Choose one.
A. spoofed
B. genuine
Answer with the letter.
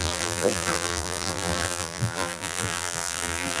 A